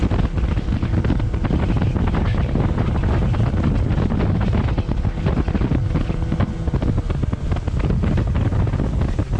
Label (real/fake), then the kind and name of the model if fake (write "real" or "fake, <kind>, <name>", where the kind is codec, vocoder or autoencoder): real